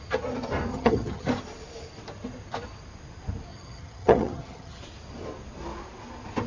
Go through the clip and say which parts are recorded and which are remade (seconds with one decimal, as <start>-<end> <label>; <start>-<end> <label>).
0.0-0.7 recorded; 0.7-1.3 remade; 1.3-3.5 recorded; 3.5-4.8 remade; 4.8-6.5 recorded